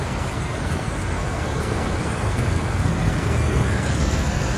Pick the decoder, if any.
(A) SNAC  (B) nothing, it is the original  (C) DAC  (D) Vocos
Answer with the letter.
A